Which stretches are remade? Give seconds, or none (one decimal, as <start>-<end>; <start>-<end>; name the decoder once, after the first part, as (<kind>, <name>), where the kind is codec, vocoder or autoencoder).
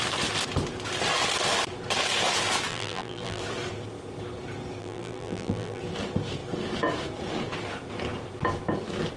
2.7-3.4 (vocoder, BigVGAN v2); 4.8-5.8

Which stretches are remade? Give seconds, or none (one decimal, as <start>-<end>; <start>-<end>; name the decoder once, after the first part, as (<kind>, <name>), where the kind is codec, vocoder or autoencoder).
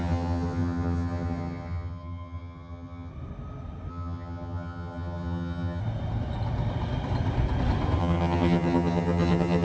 0.0-3.1 (vocoder, HiFi-GAN); 3.9-5.8; 8.0-9.6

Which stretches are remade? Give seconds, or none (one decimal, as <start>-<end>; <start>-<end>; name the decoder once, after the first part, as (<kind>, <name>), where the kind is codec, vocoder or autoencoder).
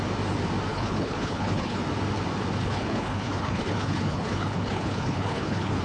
0.7-1.8 (codec, HILCodec); 2.6-5.8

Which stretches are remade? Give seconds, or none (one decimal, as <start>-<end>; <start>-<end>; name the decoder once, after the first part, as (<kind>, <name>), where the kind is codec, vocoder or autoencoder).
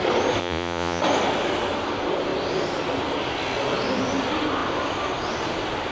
0.4-1.0 (vocoder, Vocos)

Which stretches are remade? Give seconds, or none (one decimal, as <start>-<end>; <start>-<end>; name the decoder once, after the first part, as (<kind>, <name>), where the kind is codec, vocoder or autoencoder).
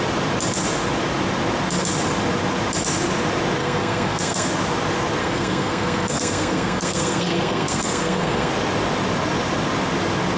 3.6-4.5 (codec, SNAC); 5.2-8.5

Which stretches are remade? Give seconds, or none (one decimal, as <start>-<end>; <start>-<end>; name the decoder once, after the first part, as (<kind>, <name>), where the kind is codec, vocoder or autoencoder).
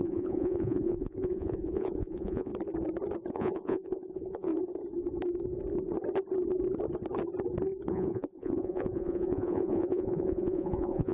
0.0-2.5 (vocoder, Vocos); 3.3-4.5; 7.9-11.1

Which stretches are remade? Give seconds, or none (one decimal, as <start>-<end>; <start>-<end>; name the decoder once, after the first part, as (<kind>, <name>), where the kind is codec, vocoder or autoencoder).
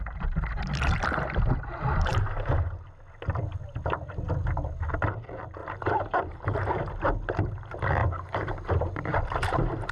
2.1-2.8 (vocoder, BigVGAN v2); 5.6-6.8; 8.0-9.9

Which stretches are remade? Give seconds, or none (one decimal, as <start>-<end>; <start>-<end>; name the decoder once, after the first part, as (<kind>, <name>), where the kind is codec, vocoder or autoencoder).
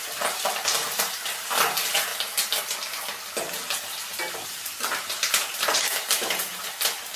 0.0-2.1 (vocoder, BigVGAN v2); 4.3-7.2